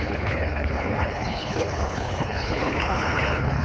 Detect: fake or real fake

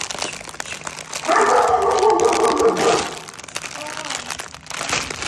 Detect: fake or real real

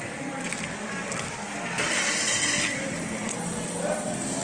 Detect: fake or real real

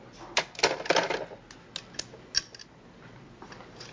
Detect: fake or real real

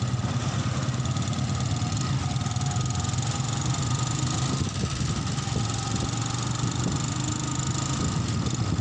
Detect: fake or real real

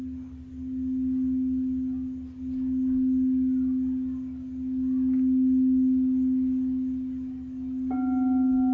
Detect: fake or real real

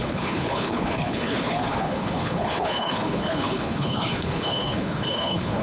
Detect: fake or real fake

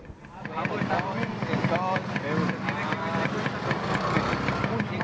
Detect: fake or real real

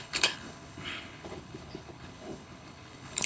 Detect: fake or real fake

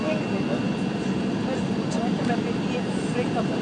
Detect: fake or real real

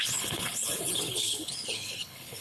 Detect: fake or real fake